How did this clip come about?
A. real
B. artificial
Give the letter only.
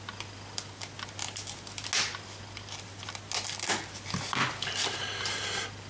A